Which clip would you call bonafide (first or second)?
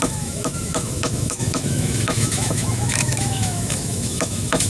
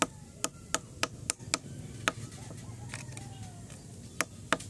second